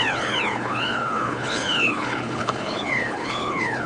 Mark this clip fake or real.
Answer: fake